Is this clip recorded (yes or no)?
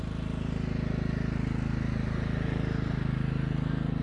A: yes